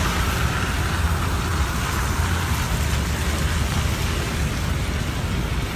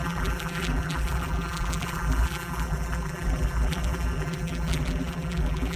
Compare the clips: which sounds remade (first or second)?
second